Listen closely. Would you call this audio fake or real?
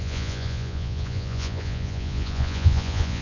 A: fake